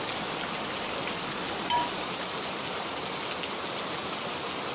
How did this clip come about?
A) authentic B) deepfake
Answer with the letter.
A